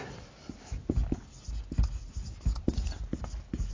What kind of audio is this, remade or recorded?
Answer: recorded